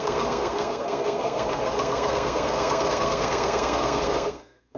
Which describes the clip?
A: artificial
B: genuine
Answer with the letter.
A